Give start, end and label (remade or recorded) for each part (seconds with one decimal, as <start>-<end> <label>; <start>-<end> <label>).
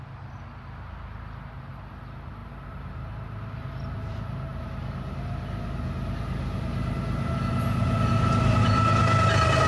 0.0-9.7 recorded